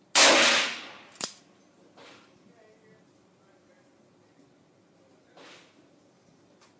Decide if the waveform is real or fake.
real